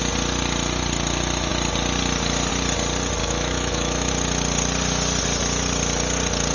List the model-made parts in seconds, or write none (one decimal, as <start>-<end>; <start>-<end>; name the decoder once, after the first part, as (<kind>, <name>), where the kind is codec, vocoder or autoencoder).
3.2-4.1 (autoencoder, DAC-VAE)